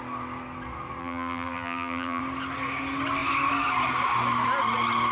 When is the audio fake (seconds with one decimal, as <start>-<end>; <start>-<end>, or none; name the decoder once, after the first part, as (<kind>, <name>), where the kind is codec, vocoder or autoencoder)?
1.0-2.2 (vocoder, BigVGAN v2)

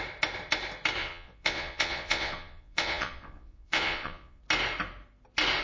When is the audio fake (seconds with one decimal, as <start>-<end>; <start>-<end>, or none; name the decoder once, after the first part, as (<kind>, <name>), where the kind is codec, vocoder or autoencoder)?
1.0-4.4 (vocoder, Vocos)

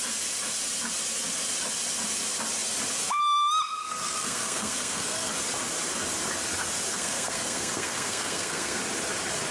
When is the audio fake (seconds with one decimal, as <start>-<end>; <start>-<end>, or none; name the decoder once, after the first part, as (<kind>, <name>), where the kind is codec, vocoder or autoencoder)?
3.8-5.3 (codec, SNAC); 6.9-8.8